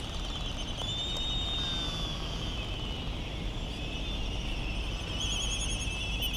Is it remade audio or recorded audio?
recorded